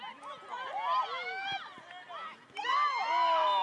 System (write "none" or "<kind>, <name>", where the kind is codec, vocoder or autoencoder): none